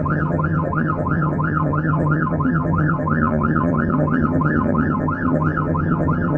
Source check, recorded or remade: remade